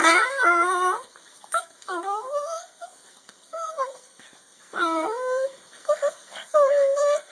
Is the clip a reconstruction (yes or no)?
yes